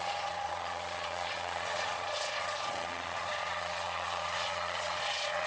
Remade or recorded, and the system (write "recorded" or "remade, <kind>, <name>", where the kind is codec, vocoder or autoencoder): remade, vocoder, Vocos